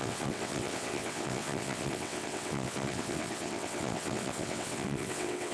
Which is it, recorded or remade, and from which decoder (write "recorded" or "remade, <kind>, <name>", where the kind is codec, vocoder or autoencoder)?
remade, vocoder, WaveNeXt